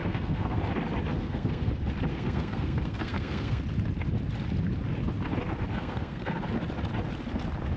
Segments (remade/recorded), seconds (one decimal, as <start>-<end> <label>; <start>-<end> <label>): 0.0-0.6 remade; 0.6-1.1 recorded; 1.1-1.7 remade; 1.7-2.1 recorded; 2.1-3.6 remade; 3.6-5.7 recorded; 5.7-6.4 remade; 6.4-7.8 recorded